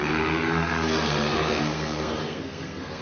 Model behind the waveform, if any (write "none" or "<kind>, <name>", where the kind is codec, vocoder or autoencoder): codec, SNAC